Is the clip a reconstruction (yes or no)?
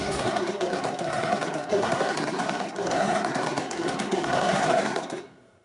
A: yes